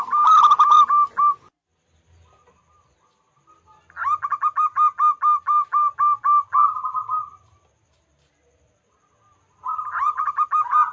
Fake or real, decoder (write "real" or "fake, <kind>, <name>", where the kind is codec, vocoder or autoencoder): real